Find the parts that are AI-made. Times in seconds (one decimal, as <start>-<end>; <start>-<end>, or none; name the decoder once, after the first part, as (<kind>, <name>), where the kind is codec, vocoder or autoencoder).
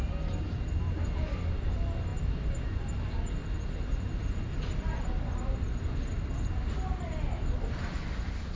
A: none